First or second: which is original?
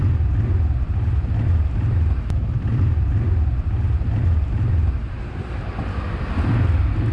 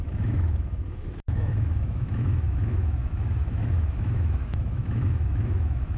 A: first